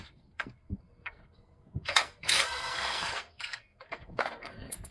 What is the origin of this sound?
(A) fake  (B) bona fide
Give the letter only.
A